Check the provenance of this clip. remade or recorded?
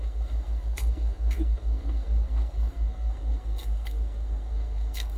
remade